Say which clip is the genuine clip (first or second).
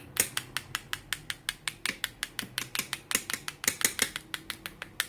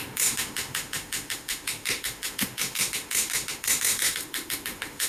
first